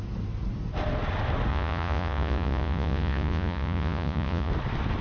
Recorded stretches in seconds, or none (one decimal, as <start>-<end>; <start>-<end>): 0.0-1.5; 4.5-5.0